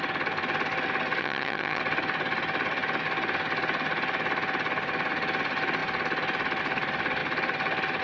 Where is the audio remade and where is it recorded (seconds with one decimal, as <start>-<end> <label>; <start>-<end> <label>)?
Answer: 0.0-1.2 recorded; 1.2-1.8 remade; 1.8-8.0 recorded